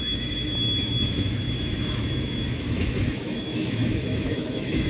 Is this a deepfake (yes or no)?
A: yes